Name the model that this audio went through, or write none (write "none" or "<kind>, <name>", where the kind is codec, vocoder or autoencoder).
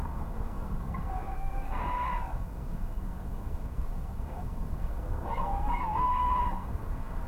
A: codec, SNAC